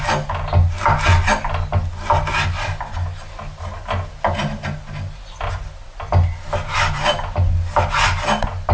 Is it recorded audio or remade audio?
recorded